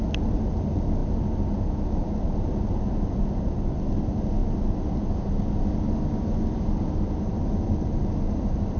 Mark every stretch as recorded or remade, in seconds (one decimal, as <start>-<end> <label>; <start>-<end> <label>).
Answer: 0.0-8.8 recorded